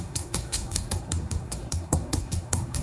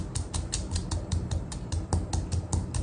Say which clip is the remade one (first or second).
first